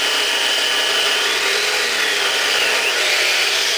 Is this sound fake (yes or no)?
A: no